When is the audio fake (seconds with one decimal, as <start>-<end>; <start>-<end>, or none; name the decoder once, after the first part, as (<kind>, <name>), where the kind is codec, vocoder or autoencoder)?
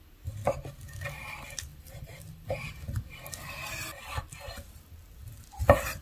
1.7-5.3 (vocoder, BigVGAN v2)